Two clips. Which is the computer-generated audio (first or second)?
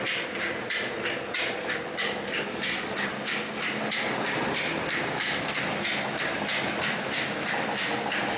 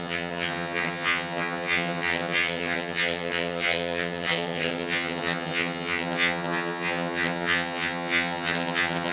second